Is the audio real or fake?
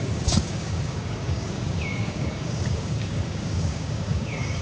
fake